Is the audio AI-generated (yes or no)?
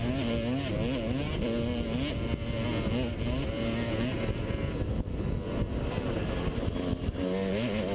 no